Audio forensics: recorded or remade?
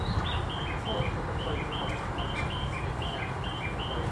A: recorded